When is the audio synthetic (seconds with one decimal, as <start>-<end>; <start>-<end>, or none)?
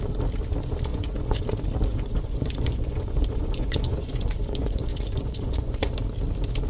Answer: 0.9-1.4; 1.9-5.9